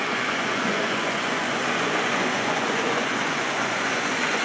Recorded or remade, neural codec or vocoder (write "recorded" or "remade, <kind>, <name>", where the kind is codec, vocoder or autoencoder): remade, vocoder, Vocos